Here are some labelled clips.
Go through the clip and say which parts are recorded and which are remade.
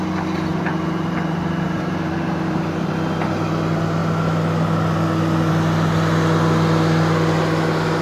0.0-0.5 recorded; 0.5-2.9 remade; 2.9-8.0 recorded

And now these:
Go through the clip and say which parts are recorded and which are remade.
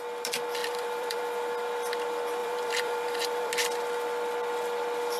0.0-0.6 recorded; 0.6-1.2 remade; 1.2-2.4 recorded; 2.4-3.5 remade; 3.5-5.2 recorded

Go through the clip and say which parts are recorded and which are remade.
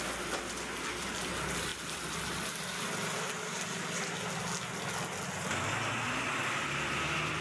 0.0-7.4 recorded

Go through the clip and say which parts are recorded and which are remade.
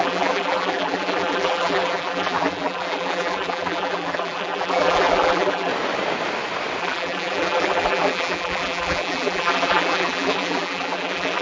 0.0-5.7 remade; 5.7-6.8 recorded; 6.8-11.4 remade